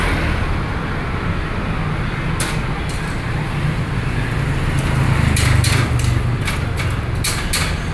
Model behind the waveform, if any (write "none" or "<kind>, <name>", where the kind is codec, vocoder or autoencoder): none